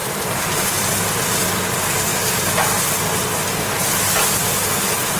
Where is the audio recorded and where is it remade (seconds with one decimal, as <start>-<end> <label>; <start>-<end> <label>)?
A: 0.0-1.4 remade; 1.4-5.2 recorded